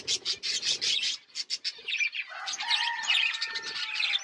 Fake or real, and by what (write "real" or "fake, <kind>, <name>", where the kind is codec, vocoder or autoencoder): real